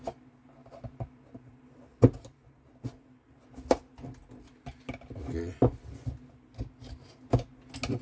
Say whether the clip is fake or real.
real